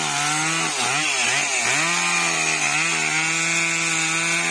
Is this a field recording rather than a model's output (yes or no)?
yes